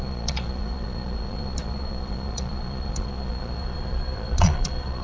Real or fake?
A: fake